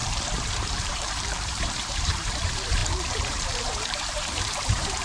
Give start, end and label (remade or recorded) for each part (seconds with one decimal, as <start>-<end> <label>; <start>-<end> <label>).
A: 0.0-5.0 remade